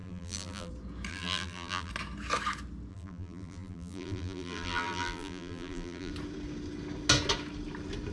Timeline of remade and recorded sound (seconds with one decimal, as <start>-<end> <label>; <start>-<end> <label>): 0.0-0.7 remade; 0.7-1.1 recorded; 1.1-1.9 remade; 1.9-2.9 recorded; 2.9-6.1 remade; 6.1-8.1 recorded